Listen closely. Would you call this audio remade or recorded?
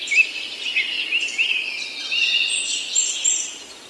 recorded